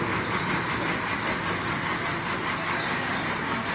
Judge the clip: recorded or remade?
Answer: recorded